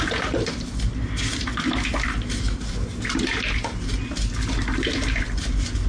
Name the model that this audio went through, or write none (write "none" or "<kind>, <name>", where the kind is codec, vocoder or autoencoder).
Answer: none